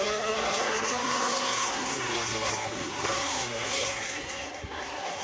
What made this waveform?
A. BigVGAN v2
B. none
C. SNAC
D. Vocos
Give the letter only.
C